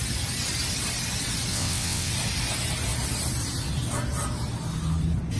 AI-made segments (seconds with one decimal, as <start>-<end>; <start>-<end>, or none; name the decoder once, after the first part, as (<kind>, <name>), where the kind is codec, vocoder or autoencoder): 1.5-2.1 (vocoder, WaveNeXt)